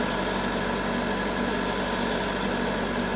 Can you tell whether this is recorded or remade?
recorded